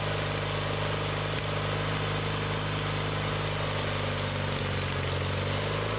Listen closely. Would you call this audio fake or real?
real